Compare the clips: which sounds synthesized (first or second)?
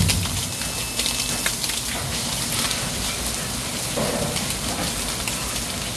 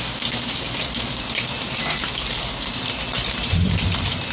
second